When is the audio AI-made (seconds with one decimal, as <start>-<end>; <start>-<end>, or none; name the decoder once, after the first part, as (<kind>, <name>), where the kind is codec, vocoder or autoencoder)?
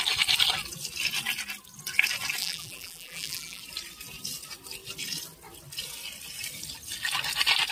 2.4-3.6 (vocoder, BigVGAN v2)